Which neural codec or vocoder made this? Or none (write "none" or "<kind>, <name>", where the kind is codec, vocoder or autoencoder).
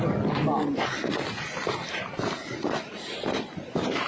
none